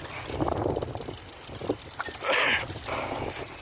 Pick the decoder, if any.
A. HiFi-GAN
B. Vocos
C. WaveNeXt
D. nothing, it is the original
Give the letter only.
D